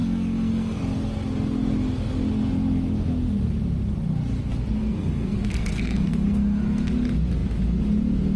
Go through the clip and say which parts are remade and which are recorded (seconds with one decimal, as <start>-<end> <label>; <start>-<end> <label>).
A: 0.0-0.8 remade; 0.8-4.8 recorded; 4.8-6.9 remade; 6.9-8.4 recorded